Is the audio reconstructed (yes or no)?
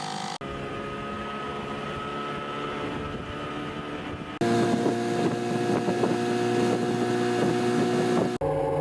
no